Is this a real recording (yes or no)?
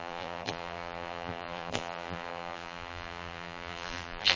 no